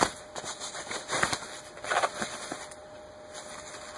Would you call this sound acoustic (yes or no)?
yes